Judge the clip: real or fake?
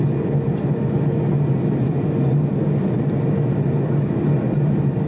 real